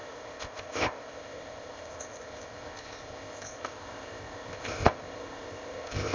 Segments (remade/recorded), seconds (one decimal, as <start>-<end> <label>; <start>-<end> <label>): 0.0-6.1 remade